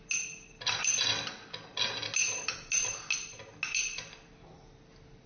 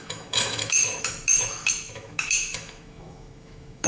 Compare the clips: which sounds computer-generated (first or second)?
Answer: second